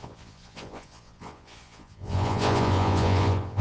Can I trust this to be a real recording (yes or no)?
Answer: no